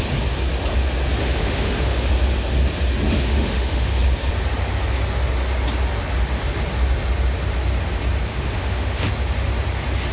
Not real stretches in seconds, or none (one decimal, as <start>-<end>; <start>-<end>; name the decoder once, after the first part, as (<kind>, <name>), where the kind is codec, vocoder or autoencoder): 1.2-2.1 (autoencoder, DAC-VAE); 3.1-4.0; 8.3-9.1